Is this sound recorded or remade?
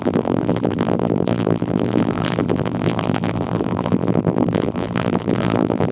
remade